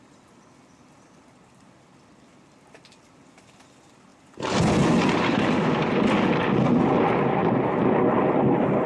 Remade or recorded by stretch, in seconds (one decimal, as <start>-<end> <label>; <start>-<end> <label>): 0.0-8.9 recorded